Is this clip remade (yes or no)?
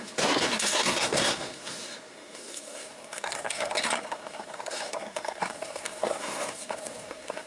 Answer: yes